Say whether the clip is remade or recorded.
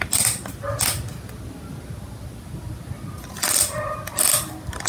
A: recorded